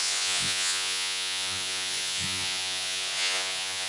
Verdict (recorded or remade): remade